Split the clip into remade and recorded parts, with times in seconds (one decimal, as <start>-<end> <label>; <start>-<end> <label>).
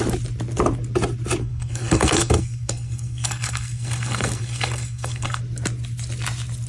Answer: 0.0-1.4 recorded; 1.4-5.4 remade; 5.4-6.7 recorded